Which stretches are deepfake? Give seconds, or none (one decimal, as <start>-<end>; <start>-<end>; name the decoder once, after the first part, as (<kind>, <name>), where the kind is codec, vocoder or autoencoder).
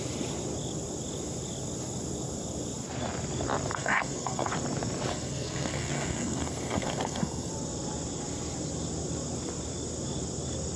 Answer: 3.7-4.5 (codec, SNAC); 5.1-7.5